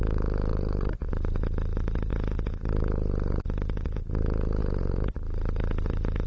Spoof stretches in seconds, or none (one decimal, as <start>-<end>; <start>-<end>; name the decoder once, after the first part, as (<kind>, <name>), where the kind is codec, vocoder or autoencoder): 0.5-1.1 (vocoder, BigVGAN v2)